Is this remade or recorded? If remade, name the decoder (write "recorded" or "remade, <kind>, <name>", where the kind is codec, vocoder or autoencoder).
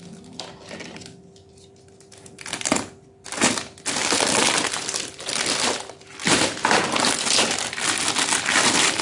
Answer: recorded